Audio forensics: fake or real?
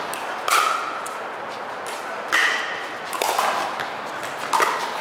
real